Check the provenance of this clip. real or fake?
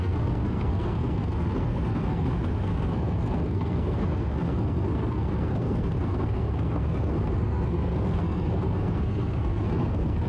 fake